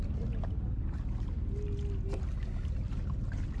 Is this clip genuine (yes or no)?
yes